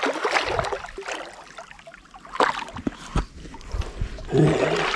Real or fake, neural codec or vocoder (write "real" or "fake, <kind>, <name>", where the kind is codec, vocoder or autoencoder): real